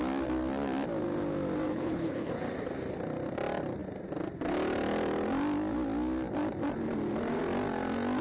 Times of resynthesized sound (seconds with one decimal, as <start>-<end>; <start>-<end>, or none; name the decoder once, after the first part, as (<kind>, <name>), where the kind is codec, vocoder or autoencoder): 1.7-2.3 (codec, HILCodec)

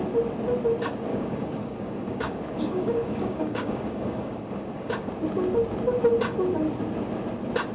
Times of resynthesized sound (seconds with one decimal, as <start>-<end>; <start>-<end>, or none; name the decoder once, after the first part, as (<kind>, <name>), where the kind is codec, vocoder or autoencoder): 1.1-5.1 (codec, DAC)

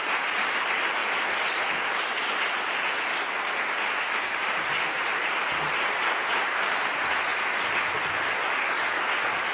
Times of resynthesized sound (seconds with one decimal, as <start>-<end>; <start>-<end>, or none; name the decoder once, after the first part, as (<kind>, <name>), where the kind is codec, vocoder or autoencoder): 0.0-1.0 (vocoder, BigVGAN v2); 4.9-7.3

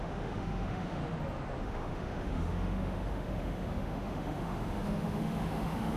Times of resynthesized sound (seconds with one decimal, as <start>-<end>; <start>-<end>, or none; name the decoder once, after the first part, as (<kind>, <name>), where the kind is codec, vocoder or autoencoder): 0.0-1.0 (autoencoder, DAC-VAE); 1.6-6.0